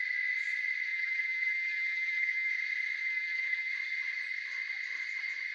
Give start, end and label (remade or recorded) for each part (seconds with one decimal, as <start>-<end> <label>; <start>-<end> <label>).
0.0-0.9 recorded; 0.9-2.5 remade; 2.5-3.0 recorded; 3.0-3.7 remade; 3.7-5.5 recorded